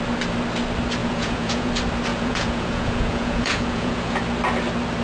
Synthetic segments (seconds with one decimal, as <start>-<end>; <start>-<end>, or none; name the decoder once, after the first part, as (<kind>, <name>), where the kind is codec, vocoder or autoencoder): 1.0-1.7 (vocoder, Vocos); 2.1-4.2